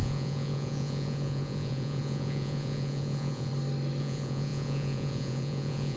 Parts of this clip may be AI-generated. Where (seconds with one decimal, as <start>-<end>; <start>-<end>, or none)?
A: 0.0-3.5; 4.0-6.0